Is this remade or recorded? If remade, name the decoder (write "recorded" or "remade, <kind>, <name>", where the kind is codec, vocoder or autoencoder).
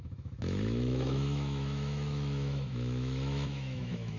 remade, autoencoder, DAC-VAE